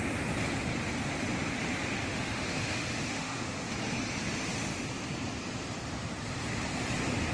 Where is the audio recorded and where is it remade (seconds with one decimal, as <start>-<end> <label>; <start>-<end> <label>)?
0.0-2.1 recorded; 2.1-3.7 remade; 3.7-7.3 recorded